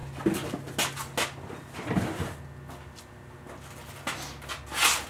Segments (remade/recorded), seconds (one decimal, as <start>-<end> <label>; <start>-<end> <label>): 0.0-5.1 recorded